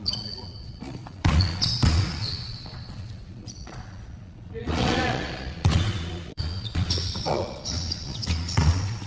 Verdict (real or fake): fake